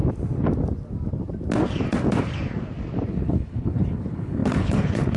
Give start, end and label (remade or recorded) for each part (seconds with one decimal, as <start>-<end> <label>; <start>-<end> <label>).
0.0-3.1 recorded; 3.1-5.2 remade

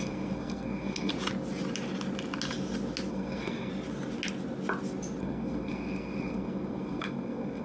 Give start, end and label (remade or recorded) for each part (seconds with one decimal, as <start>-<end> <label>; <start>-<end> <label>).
0.0-1.1 remade; 1.1-3.1 recorded; 3.1-3.7 remade; 3.7-5.2 recorded; 5.2-7.6 remade

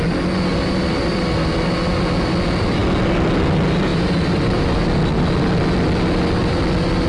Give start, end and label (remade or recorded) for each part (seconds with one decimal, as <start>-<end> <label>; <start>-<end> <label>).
0.0-3.9 recorded; 3.9-5.2 remade; 5.2-7.1 recorded

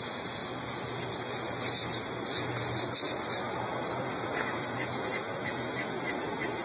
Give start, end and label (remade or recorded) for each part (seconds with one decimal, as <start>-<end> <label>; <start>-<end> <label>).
0.0-0.4 remade; 0.4-3.9 recorded; 3.9-6.6 remade

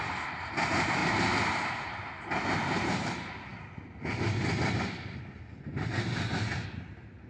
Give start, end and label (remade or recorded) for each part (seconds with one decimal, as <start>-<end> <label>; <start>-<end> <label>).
0.0-7.3 recorded